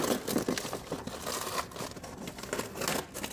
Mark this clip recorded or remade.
recorded